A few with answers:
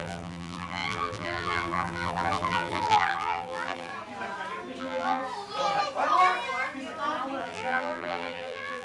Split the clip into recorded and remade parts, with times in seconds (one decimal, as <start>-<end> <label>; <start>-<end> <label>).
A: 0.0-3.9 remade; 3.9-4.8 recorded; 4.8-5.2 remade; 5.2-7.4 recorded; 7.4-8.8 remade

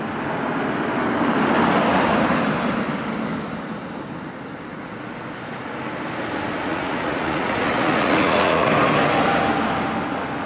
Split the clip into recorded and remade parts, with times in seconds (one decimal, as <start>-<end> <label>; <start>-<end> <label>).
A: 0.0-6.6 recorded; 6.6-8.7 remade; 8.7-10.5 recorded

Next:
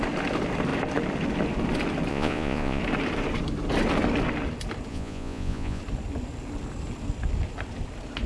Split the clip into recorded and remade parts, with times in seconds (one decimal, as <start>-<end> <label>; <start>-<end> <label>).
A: 0.0-2.1 recorded; 2.1-2.8 remade; 2.8-4.9 recorded; 4.9-5.8 remade; 5.8-8.3 recorded